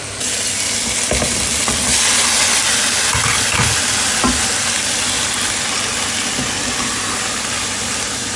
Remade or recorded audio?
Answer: recorded